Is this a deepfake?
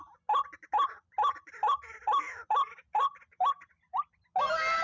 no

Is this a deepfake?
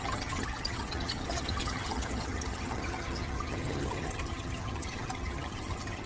yes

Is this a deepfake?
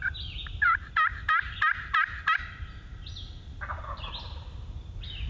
no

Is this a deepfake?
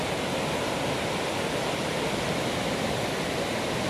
no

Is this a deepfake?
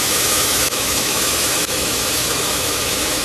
yes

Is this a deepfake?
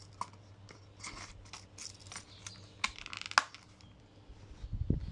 no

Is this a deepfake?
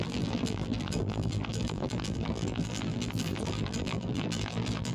yes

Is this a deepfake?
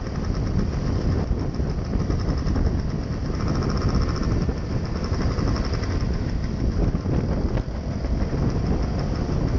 no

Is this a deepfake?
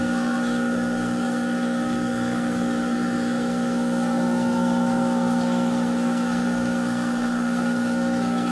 yes